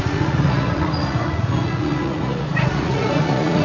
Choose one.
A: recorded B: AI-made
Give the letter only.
B